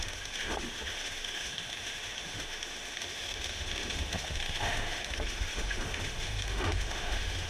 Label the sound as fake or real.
fake